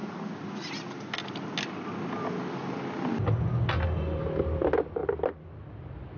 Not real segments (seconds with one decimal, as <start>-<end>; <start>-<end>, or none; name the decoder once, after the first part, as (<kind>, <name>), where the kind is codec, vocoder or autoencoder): none